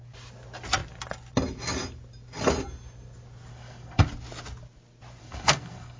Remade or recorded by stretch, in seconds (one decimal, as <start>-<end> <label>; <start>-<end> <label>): 0.0-3.5 recorded; 3.5-4.1 remade; 4.1-5.2 recorded; 5.2-6.0 remade